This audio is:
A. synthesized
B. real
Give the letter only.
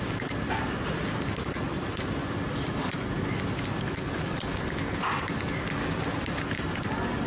B